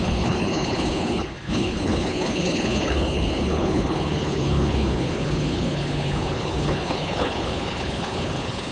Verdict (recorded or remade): remade